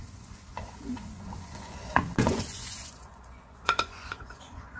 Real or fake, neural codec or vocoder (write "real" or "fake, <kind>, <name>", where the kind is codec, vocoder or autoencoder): fake, vocoder, Vocos